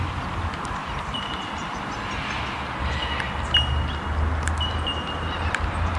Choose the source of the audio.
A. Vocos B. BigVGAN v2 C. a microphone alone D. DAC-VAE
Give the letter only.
C